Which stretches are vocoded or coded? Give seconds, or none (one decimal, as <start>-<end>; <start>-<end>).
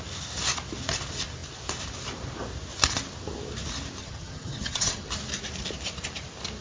4.0-5.1